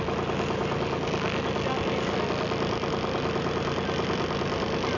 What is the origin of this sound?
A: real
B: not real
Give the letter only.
A